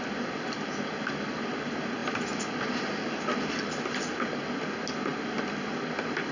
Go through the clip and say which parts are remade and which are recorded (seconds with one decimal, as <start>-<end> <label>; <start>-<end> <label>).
0.0-6.3 recorded